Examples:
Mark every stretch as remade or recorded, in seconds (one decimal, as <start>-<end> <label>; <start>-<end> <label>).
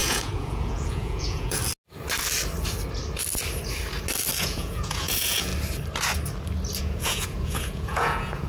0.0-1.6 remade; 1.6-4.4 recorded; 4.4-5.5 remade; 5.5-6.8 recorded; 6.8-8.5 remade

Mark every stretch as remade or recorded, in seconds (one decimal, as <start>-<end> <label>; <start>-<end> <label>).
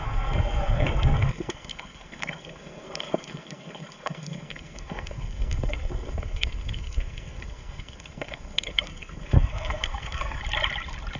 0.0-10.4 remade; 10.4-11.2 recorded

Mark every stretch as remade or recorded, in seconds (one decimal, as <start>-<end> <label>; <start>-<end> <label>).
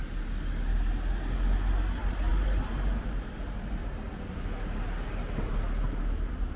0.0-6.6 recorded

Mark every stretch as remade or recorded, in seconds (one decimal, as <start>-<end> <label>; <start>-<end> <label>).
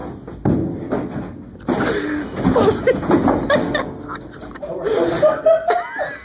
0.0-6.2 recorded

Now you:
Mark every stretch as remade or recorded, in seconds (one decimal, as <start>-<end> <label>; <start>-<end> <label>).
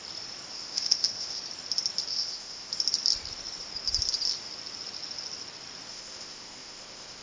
0.0-0.5 recorded; 0.5-1.4 remade; 1.4-2.1 recorded; 2.1-2.7 remade; 2.7-5.9 recorded; 5.9-7.2 remade